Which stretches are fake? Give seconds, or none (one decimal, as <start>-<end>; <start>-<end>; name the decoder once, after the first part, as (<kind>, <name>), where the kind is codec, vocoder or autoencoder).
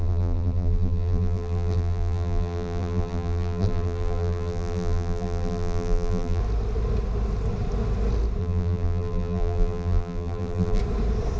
0.0-6.4 (vocoder, BigVGAN v2); 8.4-10.8